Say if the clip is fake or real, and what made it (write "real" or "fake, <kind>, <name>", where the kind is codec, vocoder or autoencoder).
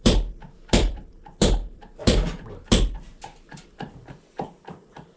fake, vocoder, BigVGAN v2